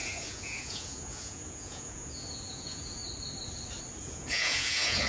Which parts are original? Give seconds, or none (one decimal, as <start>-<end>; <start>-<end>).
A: 3.0-4.0